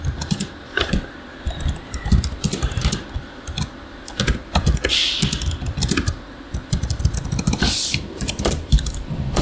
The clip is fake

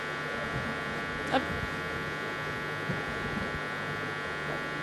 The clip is real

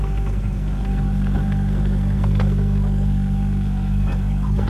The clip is fake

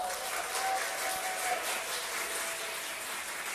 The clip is real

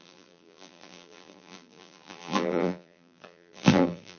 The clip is fake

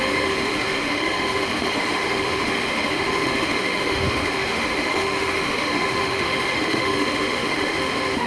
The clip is fake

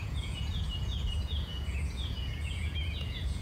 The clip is fake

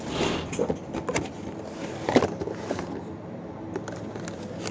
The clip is real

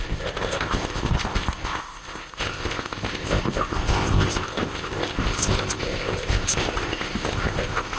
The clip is fake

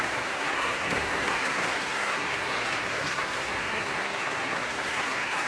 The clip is fake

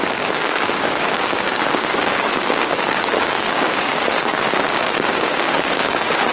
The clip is fake